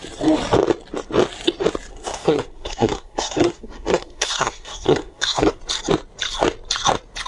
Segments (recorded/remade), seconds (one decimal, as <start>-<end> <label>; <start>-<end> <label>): 0.0-1.9 recorded; 1.9-5.6 remade; 5.6-7.3 recorded